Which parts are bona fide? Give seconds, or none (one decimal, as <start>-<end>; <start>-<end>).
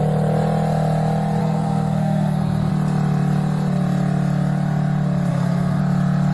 0.0-1.4; 2.7-5.3; 5.8-6.3